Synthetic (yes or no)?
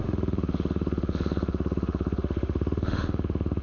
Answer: yes